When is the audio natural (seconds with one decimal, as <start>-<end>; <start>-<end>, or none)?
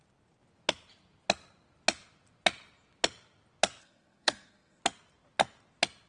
0.0-3.8; 4.8-6.1